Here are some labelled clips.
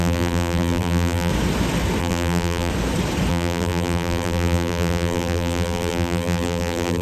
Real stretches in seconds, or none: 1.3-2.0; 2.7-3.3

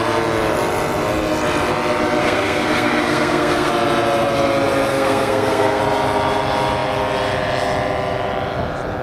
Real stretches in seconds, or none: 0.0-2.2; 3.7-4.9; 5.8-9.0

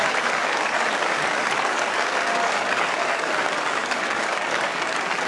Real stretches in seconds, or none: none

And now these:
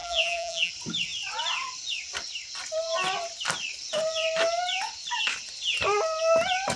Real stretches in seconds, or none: 0.7-6.8

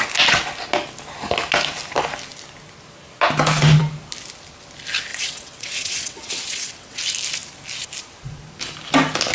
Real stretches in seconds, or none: 0.0-5.1; 7.0-9.3

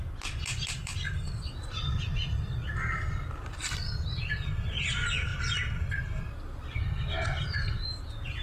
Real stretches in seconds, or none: 0.0-8.4